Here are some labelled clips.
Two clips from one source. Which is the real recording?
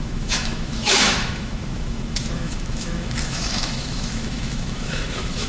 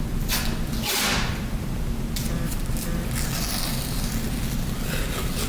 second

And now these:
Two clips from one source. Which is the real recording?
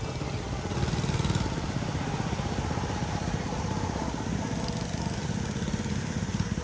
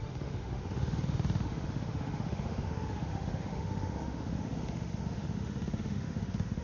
first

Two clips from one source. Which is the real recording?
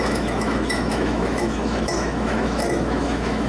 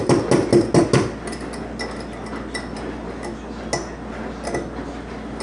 second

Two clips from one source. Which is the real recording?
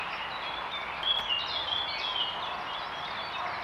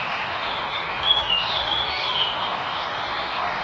first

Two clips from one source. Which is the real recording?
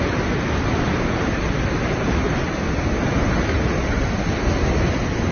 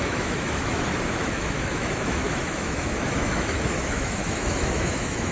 first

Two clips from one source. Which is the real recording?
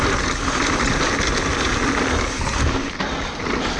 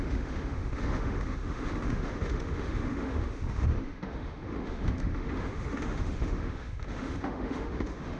first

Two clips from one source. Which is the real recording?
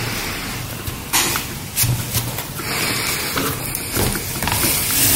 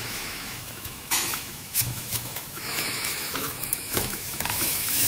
first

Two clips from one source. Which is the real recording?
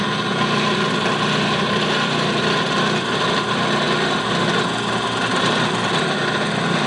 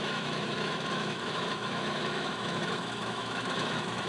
first